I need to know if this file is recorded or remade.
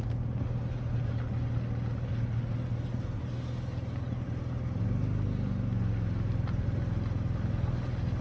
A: recorded